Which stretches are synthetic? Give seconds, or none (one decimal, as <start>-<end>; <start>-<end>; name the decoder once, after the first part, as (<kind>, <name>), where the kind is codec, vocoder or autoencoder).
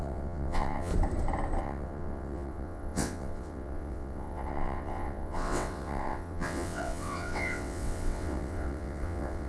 0.0-0.9 (vocoder, WaveNeXt); 1.6-9.5